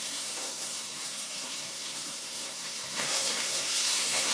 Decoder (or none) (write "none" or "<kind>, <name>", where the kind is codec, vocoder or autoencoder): codec, SNAC